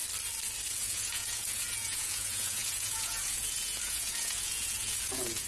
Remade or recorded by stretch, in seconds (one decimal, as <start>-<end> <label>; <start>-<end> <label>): 0.0-0.7 recorded; 0.7-5.5 remade